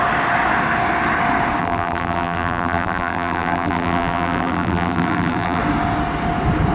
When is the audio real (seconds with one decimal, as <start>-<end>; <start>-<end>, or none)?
0.0-1.6; 5.6-6.7